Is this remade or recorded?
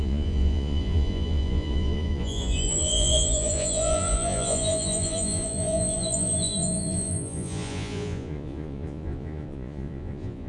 remade